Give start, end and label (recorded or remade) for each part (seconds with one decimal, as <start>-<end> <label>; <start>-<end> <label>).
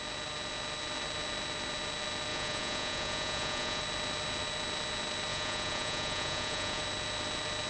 0.0-2.3 recorded; 2.3-3.8 remade; 3.8-5.3 recorded; 5.3-6.8 remade; 6.8-7.7 recorded